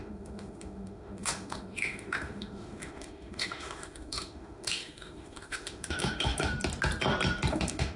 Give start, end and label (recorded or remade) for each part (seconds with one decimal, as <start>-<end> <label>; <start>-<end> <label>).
0.0-6.5 remade; 6.5-7.5 recorded; 7.5-8.0 remade